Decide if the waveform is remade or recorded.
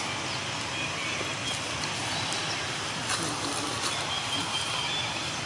recorded